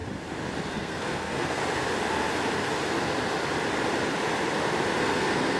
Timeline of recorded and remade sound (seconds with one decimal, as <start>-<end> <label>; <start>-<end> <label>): 0.0-0.7 recorded; 0.7-1.6 remade; 1.6-5.0 recorded; 5.0-5.6 remade